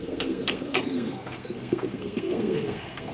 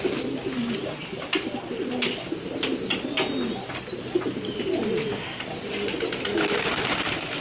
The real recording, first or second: second